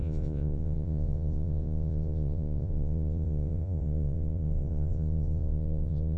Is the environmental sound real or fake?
fake